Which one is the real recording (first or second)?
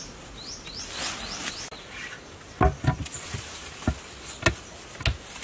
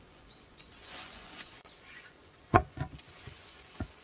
first